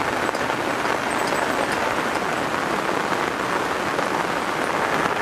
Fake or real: real